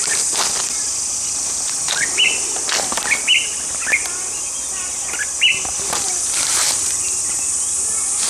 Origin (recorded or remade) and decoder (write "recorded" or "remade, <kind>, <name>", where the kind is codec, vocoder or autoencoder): recorded